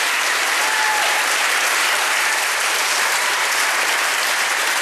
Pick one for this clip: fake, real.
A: fake